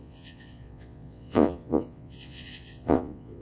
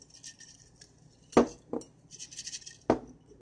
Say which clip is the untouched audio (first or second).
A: second